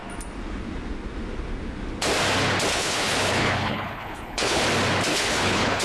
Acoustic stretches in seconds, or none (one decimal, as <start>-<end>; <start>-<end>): 0.0-2.7; 4.6-5.1